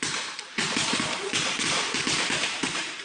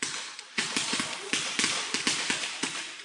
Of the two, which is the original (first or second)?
second